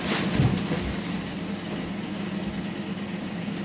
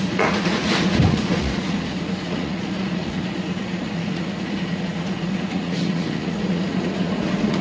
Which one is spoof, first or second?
second